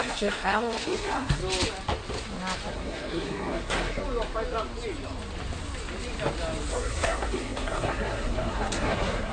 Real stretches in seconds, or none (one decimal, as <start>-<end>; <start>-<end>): 1.4-2.7; 4.0-6.7